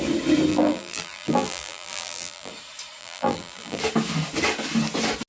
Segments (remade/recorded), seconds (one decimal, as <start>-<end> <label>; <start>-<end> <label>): 0.0-0.5 recorded; 0.5-2.5 remade; 2.5-3.0 recorded; 3.0-3.8 remade; 3.8-5.3 recorded